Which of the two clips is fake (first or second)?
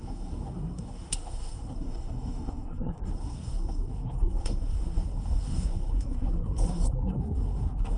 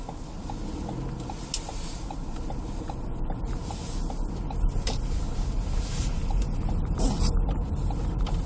first